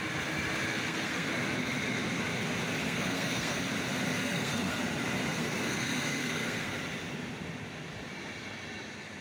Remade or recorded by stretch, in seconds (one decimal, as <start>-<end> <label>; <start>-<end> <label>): 0.0-0.7 recorded; 0.7-1.3 remade; 1.3-2.8 recorded; 2.8-3.6 remade; 3.6-4.2 recorded; 4.2-4.8 remade; 4.8-5.3 recorded; 5.3-6.8 remade; 6.8-9.2 recorded